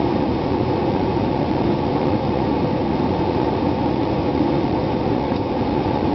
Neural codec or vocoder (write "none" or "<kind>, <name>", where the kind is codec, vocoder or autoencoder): vocoder, Vocos